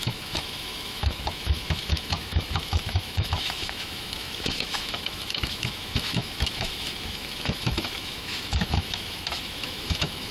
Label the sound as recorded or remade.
remade